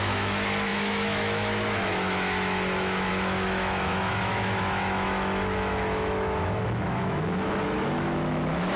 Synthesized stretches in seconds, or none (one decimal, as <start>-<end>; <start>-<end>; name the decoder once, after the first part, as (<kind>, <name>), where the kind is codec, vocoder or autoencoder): 0.0-8.8 (autoencoder, DAC-VAE)